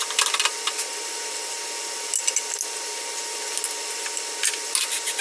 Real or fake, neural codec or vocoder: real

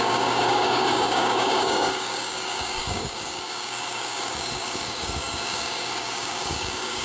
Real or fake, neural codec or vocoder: fake, codec, DAC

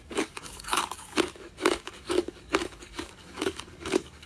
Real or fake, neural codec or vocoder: fake, codec, DAC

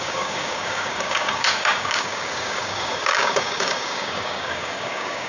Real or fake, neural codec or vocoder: fake, codec, DAC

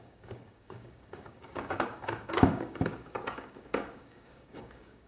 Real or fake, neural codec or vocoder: fake, codec, DAC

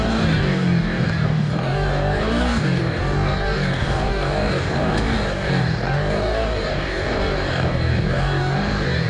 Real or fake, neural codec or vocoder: fake, codec, DAC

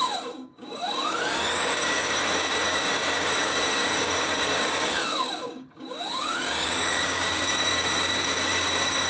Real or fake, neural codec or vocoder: fake, codec, DAC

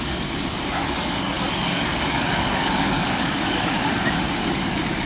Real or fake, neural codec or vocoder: fake, codec, DAC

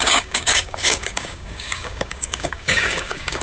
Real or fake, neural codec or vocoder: fake, codec, DAC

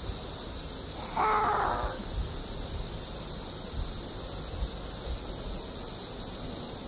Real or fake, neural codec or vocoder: real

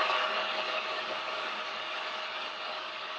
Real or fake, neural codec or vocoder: fake, codec, DAC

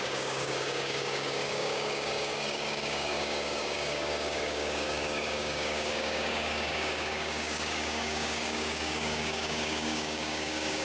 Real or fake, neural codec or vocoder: fake, codec, DAC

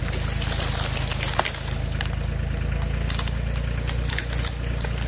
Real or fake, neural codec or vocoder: real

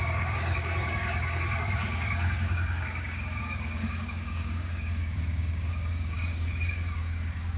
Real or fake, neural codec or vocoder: fake, codec, DAC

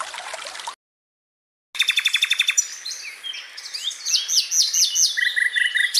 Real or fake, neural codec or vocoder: real